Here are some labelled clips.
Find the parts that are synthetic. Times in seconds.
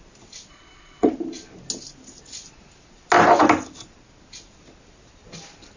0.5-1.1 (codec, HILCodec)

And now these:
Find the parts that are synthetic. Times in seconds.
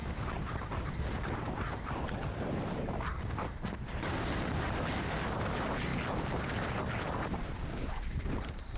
0.0-5.1 (vocoder, BigVGAN v2)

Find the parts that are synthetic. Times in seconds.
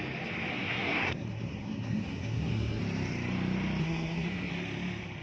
0.5-2.8 (codec, SNAC); 3.8-4.5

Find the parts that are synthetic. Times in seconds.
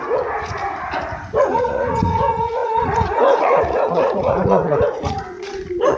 0.0-0.6 (vocoder, Vocos); 1.4-6.0